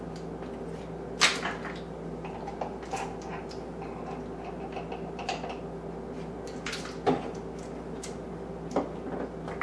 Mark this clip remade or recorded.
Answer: recorded